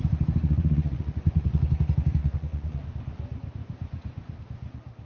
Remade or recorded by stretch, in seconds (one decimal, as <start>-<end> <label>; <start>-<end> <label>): 0.0-0.4 recorded; 0.4-1.6 remade; 1.6-2.2 recorded; 2.2-2.8 remade; 2.8-3.6 recorded; 3.6-4.4 remade; 4.4-5.1 recorded

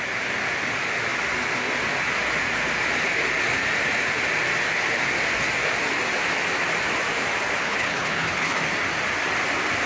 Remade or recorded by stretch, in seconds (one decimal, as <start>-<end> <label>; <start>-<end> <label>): 0.0-7.6 recorded; 7.6-8.6 remade; 8.6-9.9 recorded

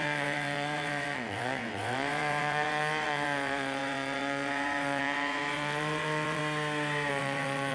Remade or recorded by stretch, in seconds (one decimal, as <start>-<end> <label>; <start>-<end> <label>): 0.0-6.4 remade; 6.4-7.1 recorded; 7.1-7.7 remade

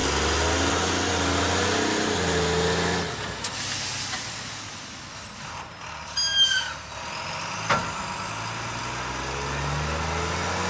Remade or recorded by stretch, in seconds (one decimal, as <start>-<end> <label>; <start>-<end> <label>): 0.0-10.7 recorded

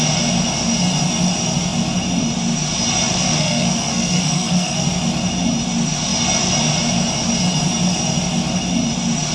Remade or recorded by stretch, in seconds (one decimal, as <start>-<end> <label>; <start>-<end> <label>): 0.0-3.2 recorded; 3.2-4.8 remade; 4.8-9.3 recorded

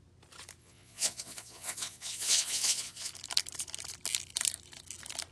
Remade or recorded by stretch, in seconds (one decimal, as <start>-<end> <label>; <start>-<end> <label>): 0.0-0.6 recorded; 0.6-3.1 remade; 3.1-5.3 recorded

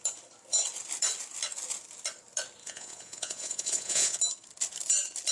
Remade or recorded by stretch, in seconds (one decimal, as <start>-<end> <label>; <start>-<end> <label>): 0.0-2.6 recorded; 2.6-4.2 remade; 4.2-5.3 recorded

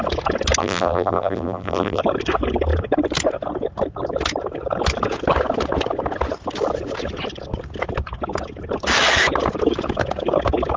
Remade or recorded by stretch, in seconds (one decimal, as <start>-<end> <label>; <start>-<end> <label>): 0.0-0.6 recorded; 0.6-2.0 remade; 2.0-10.8 recorded